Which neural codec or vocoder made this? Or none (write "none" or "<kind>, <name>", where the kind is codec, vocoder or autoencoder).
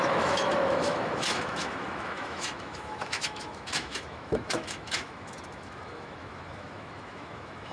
autoencoder, DAC-VAE